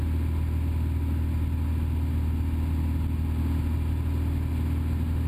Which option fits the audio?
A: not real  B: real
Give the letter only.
B